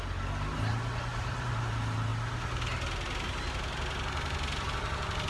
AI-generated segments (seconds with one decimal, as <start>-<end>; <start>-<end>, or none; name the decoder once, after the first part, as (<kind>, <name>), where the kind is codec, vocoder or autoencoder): 1.1-1.7 (vocoder, BigVGAN v2)

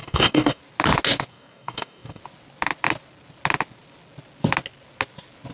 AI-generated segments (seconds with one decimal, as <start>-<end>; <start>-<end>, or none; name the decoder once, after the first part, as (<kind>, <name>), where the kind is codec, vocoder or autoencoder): 0.0-0.6 (codec, DAC); 1.3-2.2

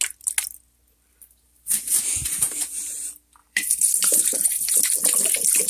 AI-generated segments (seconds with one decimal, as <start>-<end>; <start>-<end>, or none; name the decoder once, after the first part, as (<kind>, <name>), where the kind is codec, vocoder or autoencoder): 2.2-2.8 (vocoder, BigVGAN v2); 3.4-4.8

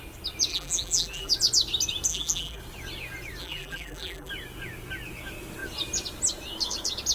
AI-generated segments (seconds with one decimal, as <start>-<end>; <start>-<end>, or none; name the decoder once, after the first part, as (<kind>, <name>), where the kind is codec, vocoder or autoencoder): 0.5-1.3 (vocoder, BigVGAN v2); 2.1-2.6; 3.4-4.3